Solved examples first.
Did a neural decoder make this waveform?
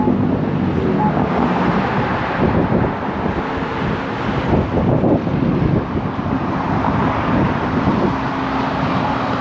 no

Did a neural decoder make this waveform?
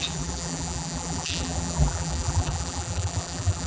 yes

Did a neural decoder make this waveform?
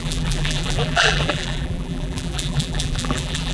yes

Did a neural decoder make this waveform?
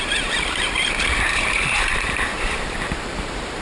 yes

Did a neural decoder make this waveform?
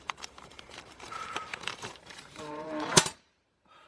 yes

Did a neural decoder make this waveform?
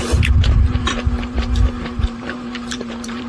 yes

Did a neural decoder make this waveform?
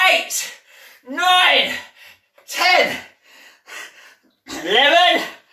no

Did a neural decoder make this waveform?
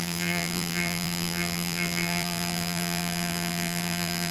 yes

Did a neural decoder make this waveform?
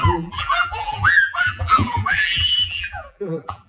yes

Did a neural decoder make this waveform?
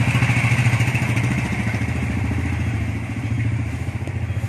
yes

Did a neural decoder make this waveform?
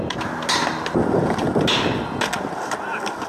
no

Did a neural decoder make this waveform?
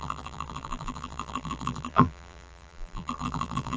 yes